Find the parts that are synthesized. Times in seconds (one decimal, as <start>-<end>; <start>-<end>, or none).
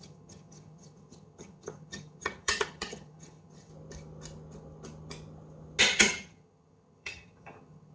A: 0.0-3.7; 5.8-7.9